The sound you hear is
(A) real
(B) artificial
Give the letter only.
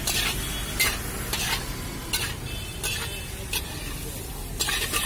A